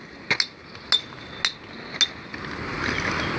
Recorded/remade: recorded